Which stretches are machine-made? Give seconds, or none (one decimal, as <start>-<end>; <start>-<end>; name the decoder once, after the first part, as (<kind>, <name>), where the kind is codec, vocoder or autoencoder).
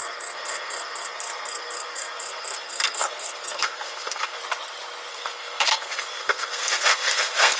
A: 0.0-4.4 (codec, SNAC); 5.1-7.6